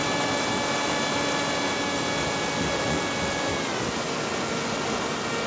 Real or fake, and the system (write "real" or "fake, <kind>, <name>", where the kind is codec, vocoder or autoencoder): real